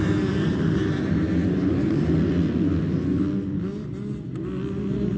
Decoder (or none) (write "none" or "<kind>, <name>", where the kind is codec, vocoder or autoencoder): none